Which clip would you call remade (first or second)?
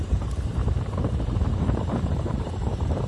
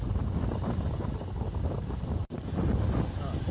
first